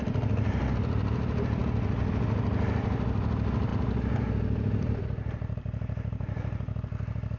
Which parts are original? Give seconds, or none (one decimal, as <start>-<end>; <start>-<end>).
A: 0.0-7.4